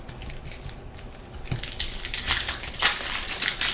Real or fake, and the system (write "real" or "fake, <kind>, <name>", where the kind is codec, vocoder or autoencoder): real